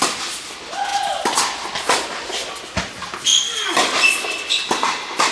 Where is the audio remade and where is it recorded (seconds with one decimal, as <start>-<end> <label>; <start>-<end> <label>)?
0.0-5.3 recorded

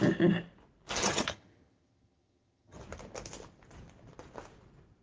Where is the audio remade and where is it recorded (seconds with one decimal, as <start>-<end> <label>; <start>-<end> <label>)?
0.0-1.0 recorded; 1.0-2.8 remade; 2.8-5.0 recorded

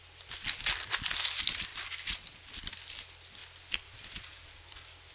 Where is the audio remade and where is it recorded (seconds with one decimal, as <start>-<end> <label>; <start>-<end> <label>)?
0.0-5.1 recorded

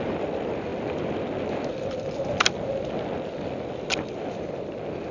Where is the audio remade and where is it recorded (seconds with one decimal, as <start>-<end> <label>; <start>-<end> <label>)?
0.0-5.1 recorded